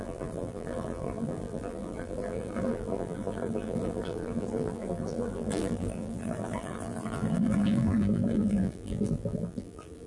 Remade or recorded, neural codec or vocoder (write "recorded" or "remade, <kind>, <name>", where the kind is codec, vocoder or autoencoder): remade, vocoder, BigVGAN v2